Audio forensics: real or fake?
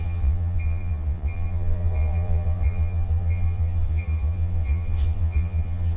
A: fake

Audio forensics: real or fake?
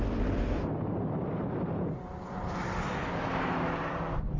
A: real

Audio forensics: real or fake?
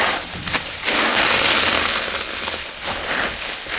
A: real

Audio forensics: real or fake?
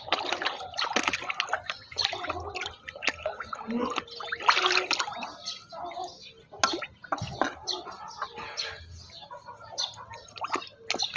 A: real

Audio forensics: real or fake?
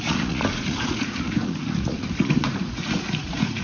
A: fake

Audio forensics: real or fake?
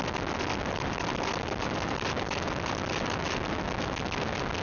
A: real